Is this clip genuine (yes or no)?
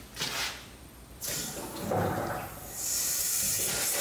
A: yes